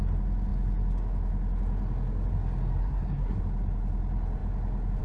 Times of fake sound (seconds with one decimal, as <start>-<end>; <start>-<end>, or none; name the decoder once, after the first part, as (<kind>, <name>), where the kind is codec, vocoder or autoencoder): 2.8-3.4 (codec, SNAC)